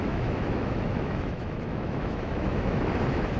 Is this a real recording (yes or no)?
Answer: no